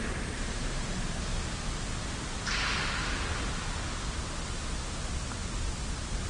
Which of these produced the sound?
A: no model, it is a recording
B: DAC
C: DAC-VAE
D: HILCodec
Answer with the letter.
A